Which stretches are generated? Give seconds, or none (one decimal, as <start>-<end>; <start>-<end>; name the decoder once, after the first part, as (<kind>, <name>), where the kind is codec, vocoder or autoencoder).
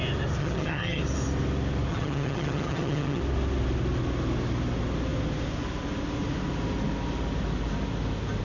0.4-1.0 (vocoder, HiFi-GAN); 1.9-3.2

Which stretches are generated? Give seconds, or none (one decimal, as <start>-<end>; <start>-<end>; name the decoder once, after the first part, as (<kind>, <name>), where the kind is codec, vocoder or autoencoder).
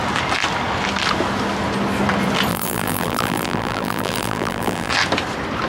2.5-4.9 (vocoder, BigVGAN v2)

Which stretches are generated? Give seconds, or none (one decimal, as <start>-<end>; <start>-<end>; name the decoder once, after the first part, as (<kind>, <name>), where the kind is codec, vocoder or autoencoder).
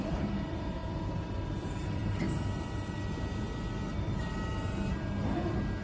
0.0-0.8 (vocoder, BigVGAN v2); 1.6-2.0